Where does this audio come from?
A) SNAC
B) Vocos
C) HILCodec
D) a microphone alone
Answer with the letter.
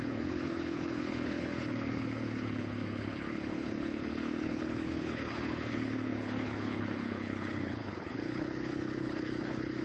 C